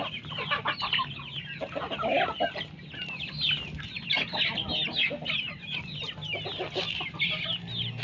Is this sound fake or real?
real